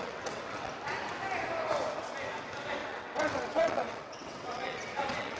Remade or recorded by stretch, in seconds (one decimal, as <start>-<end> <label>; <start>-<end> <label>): 0.0-0.7 remade; 0.7-2.8 recorded; 2.8-5.4 remade